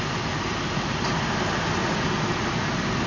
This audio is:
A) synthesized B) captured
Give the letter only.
B